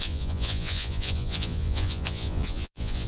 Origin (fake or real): fake